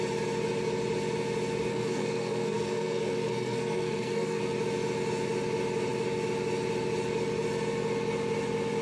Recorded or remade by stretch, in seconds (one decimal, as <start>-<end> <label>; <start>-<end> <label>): 0.0-1.7 recorded; 1.7-4.4 remade; 4.4-8.8 recorded